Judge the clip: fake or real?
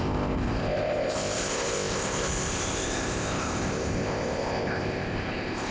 fake